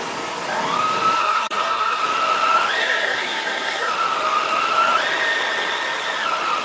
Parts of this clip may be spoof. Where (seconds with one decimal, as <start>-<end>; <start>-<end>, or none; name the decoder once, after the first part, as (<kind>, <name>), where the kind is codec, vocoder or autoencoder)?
1.2-2.0 (codec, SNAC); 2.8-3.9

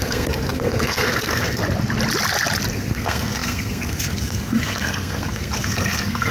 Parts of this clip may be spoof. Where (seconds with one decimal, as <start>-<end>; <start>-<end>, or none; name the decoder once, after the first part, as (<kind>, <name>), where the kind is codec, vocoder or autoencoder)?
0.0-1.6 (codec, SNAC); 2.7-6.3

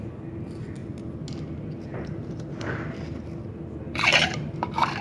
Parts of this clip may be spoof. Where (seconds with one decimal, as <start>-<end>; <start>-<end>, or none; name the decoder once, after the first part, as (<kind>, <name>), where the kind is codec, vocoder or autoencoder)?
1.9-2.6 (vocoder, BigVGAN v2); 4.1-5.0

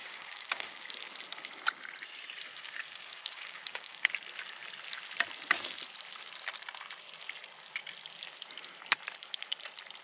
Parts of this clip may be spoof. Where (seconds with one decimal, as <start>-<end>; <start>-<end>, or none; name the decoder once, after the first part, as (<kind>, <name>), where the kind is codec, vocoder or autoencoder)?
0.0-0.9 (codec, DAC); 2.5-4.1

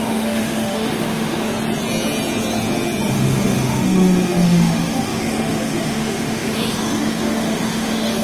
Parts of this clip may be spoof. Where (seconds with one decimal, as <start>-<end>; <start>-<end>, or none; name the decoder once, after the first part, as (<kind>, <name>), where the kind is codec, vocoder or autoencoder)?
0.0-1.5 (autoencoder, DAC-VAE); 3.1-8.2

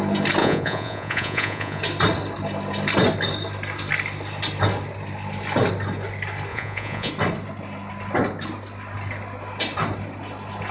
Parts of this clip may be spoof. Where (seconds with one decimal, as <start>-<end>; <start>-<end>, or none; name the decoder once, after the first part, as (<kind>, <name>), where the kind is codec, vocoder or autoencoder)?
0.4-1.8 (vocoder, Vocos); 6.5-7.1